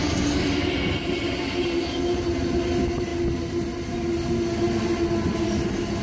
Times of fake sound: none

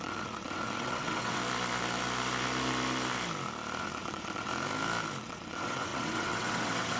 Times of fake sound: 0.0-1.4 (vocoder, WaveNeXt); 3.8-4.5; 5.2-7.0

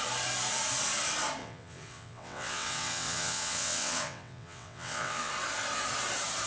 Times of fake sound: 1.4-5.3 (vocoder, WaveNeXt)

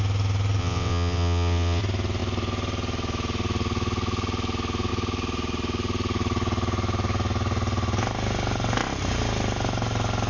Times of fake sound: 0.6-1.8 (vocoder, WaveNeXt)

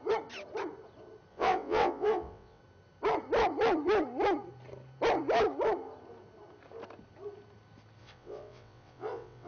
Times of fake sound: 1.3-2.6 (vocoder, WaveNeXt); 8.0-9.5

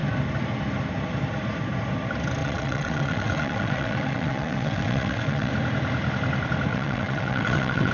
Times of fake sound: 2.4-5.5 (vocoder, WaveNeXt); 6.7-7.9

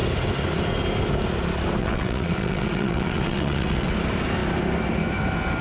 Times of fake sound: 1.8-3.9 (vocoder, WaveNeXt)

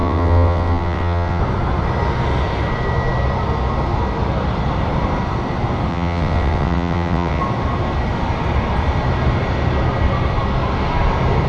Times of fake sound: 0.0-1.4 (vocoder, WaveNeXt); 5.9-7.4